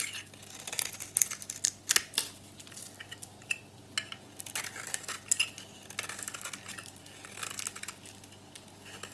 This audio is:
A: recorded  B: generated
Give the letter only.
A